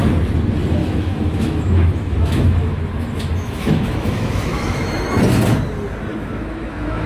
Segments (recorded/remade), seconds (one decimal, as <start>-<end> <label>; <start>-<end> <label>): 0.0-0.8 recorded; 0.8-5.1 remade; 5.1-6.1 recorded; 6.1-7.1 remade